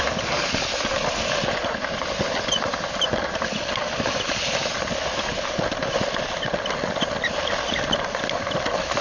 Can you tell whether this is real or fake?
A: real